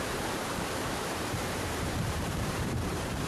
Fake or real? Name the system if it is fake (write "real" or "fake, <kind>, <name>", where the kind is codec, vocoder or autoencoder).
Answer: fake, vocoder, BigVGAN v2